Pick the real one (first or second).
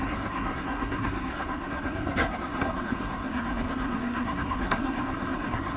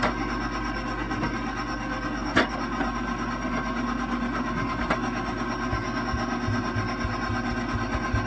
second